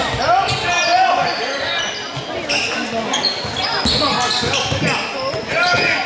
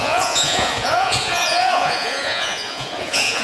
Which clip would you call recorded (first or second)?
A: first